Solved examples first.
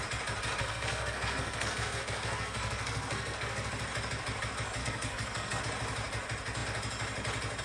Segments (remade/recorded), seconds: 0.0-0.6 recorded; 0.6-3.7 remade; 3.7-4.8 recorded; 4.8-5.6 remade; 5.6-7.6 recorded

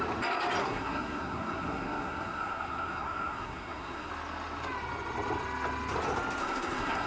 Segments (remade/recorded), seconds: 0.0-0.6 recorded; 0.6-4.1 remade; 4.1-6.4 recorded; 6.4-7.1 remade

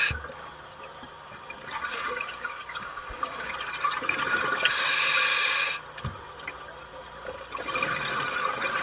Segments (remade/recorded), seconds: 0.0-1.9 recorded; 1.9-3.5 remade; 3.5-8.8 recorded

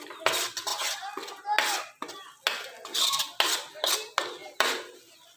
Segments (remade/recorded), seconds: 0.0-4.4 recorded; 4.4-5.0 remade; 5.0-5.4 recorded